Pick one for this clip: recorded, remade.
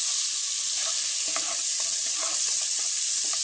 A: recorded